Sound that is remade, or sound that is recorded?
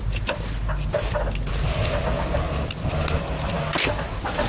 recorded